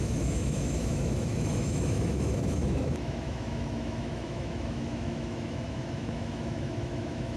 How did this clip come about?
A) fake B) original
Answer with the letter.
A